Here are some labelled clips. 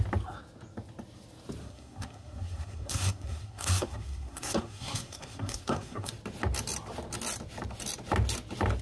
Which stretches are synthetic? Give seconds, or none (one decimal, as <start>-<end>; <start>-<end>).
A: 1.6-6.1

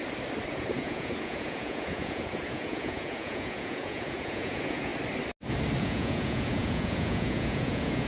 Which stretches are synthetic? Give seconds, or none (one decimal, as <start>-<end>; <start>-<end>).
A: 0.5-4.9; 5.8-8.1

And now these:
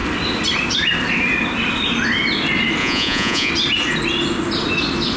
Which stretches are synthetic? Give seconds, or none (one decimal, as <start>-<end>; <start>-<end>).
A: 2.8-3.5